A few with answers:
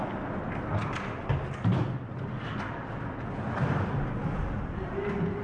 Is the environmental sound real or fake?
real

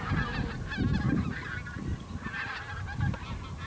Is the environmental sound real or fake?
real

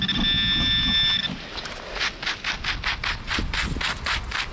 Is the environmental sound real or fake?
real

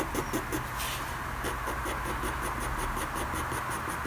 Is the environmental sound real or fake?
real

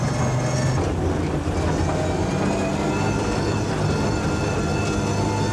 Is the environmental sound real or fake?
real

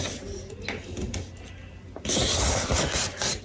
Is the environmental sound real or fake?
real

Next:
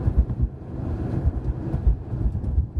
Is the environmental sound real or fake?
fake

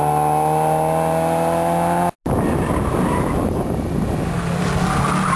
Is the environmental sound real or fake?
real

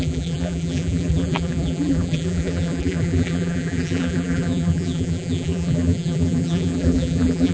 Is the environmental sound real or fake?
fake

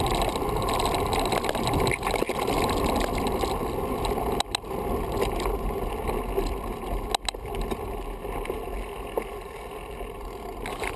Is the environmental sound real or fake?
real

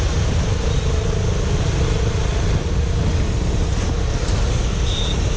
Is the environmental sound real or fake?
real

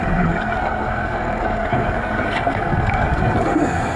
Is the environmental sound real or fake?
fake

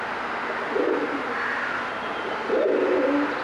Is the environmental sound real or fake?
real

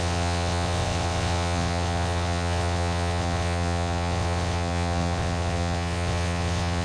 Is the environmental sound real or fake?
fake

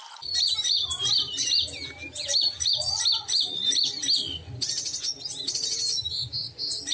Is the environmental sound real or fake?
real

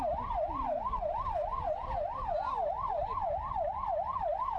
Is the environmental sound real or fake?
real